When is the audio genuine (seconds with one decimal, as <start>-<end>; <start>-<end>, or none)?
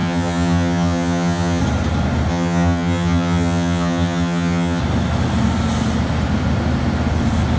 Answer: 1.6-2.3; 4.8-7.6